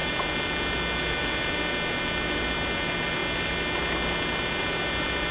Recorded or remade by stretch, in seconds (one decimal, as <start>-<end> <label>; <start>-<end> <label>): 0.0-5.3 recorded